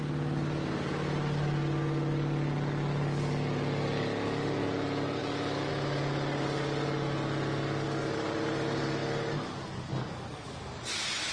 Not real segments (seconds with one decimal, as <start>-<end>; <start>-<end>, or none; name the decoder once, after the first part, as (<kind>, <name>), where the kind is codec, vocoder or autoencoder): 5.2-5.7 (autoencoder, DAC-VAE)